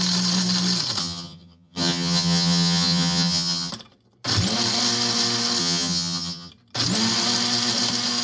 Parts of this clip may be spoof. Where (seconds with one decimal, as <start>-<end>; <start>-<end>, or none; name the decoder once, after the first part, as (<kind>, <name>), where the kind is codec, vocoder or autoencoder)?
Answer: 1.0-3.7 (vocoder, HiFi-GAN); 5.6-6.5